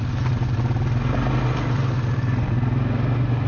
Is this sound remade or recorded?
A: recorded